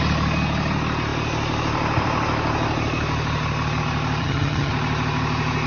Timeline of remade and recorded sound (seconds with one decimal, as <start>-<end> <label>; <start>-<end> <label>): 0.0-4.2 recorded; 4.2-4.7 remade; 4.7-5.7 recorded